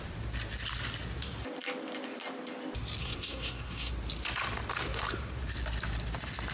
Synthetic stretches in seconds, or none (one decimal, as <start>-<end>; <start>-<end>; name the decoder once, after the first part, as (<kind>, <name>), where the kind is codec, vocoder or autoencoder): 3.0-3.9 (codec, SNAC)